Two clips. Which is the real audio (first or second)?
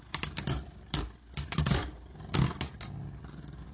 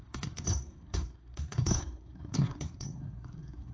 first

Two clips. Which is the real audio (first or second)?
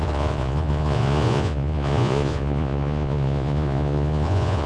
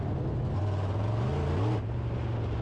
second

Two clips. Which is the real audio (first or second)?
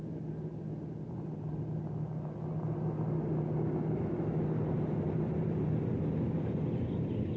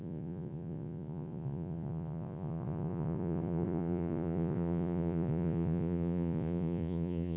first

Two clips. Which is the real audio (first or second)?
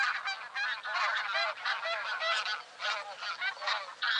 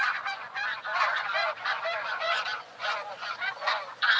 first